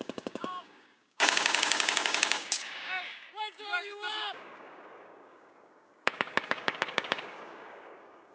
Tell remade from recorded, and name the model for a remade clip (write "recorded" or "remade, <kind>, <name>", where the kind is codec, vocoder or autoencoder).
remade, codec, DAC